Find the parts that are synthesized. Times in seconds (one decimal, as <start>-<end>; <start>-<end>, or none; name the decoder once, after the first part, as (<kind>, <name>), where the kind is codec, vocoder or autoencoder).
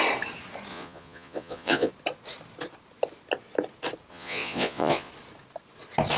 0.7-1.9 (vocoder, Vocos); 4.1-5.1